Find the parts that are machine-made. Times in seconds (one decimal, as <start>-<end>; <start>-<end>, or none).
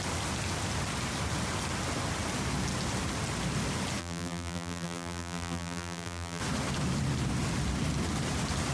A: 4.0-6.4